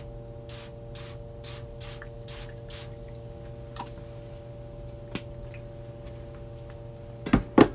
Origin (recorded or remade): recorded